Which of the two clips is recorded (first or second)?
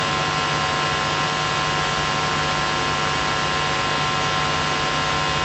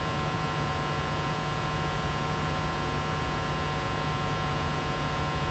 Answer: first